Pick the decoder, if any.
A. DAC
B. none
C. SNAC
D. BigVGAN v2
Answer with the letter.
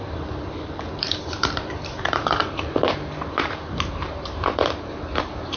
D